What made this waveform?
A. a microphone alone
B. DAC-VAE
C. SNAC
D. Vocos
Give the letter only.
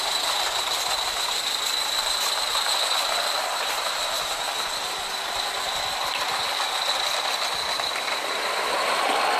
A